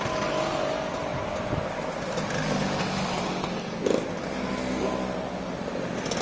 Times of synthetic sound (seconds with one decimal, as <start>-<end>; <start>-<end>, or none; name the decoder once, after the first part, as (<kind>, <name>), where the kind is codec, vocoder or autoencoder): none